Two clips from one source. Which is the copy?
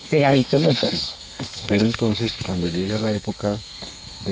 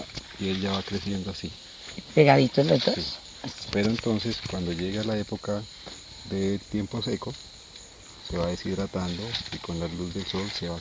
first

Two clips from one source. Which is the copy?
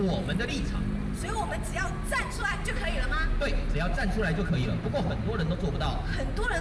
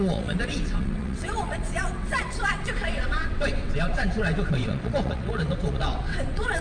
second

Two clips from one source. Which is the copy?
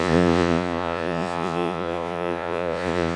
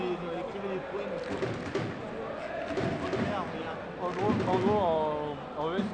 first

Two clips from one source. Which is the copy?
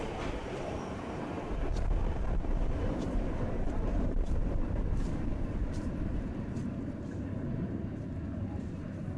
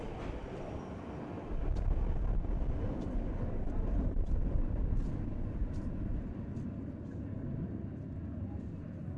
first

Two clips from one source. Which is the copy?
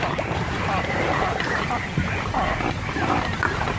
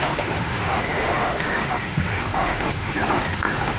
second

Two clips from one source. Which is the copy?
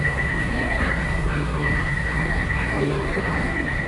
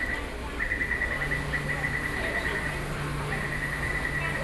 first